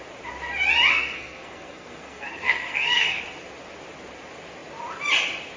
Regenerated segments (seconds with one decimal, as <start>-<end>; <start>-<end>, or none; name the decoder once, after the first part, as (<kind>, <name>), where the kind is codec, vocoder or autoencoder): 0.9-3.2 (codec, SNAC)